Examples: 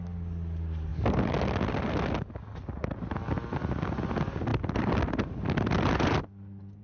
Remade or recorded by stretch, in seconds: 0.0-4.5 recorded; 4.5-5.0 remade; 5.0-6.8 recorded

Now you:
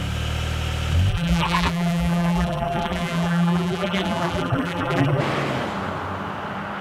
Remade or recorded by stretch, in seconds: 0.0-1.1 recorded; 1.1-5.2 remade; 5.2-6.8 recorded